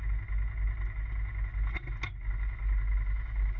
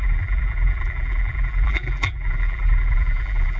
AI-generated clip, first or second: second